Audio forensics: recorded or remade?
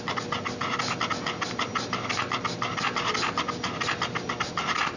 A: recorded